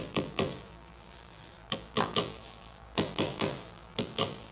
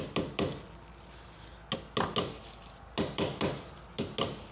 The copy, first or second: first